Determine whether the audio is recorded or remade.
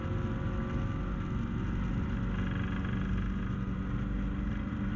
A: recorded